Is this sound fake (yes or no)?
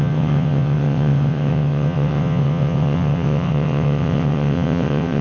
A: yes